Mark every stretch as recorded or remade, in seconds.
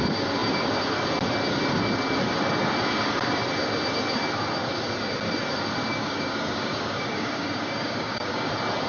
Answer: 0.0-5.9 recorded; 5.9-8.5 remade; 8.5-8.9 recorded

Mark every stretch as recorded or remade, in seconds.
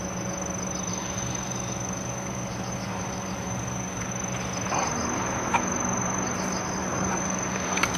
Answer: 0.0-0.9 recorded; 0.9-4.1 remade; 4.1-6.8 recorded; 6.8-8.0 remade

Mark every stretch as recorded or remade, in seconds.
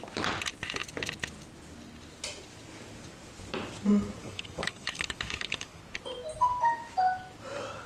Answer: 0.0-4.2 recorded; 4.2-5.8 remade; 5.8-7.9 recorded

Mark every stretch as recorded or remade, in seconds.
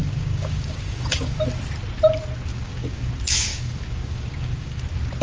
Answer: 0.0-1.4 remade; 1.4-2.5 recorded; 2.5-3.1 remade; 3.1-3.5 recorded; 3.5-4.8 remade; 4.8-5.2 recorded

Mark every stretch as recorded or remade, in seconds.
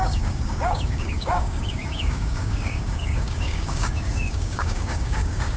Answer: 0.0-5.6 remade